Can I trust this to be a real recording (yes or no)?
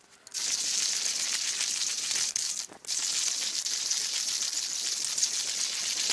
yes